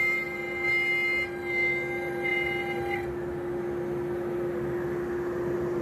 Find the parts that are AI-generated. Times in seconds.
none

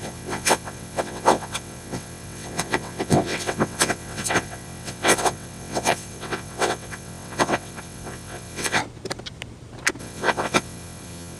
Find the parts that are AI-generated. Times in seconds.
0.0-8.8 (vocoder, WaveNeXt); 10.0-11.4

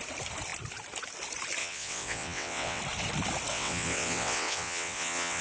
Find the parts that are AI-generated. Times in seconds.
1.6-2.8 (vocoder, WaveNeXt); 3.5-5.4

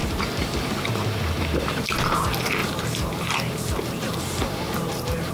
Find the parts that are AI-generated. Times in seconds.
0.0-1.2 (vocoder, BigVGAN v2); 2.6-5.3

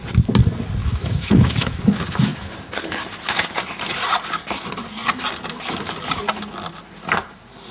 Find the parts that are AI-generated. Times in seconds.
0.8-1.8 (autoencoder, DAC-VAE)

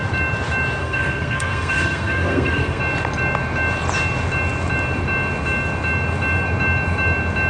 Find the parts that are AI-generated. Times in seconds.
0.8-2.8 (codec, SNAC)

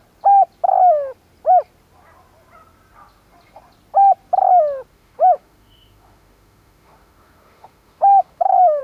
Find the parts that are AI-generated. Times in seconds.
4.9-8.8 (autoencoder, DAC-VAE)